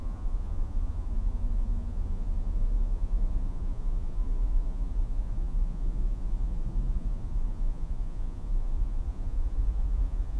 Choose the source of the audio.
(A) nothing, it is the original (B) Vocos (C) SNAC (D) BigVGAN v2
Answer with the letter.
B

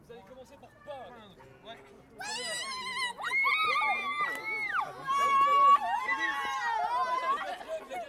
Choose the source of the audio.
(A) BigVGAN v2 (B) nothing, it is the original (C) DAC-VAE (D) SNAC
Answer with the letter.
B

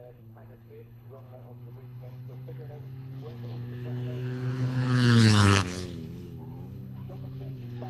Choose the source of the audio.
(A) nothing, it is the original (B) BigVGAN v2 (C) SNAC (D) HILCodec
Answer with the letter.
D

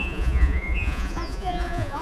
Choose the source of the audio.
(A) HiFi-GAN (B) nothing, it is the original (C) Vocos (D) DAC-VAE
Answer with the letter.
C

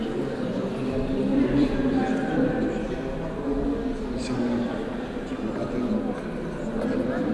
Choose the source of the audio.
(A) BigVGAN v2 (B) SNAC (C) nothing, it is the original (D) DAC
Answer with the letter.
C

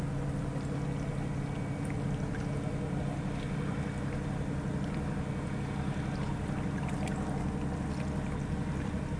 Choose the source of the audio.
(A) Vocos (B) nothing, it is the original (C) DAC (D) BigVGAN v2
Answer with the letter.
B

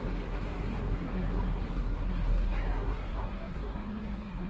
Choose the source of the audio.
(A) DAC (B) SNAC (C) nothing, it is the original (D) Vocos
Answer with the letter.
B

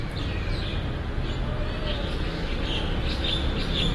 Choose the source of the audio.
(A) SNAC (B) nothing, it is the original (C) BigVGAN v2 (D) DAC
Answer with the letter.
B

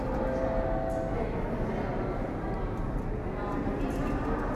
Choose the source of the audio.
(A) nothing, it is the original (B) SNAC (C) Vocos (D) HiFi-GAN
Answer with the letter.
A